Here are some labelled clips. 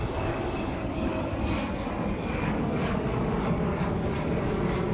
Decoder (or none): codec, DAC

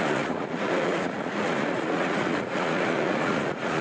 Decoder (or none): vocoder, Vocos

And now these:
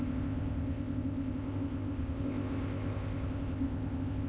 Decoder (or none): codec, ZipCodec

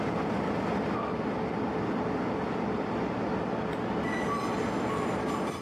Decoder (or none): none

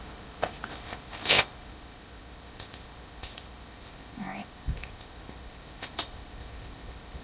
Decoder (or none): codec, ZipCodec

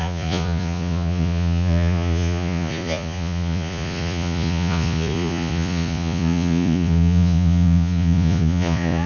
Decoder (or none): vocoder, Vocos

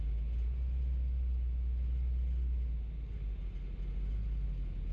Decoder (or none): none